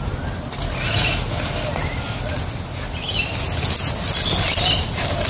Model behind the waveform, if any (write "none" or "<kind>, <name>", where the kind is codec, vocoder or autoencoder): none